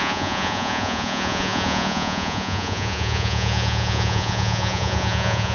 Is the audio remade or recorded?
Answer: remade